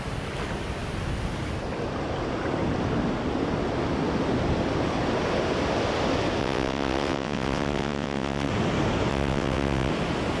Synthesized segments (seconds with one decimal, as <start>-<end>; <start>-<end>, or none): 6.4-8.5; 9.1-9.9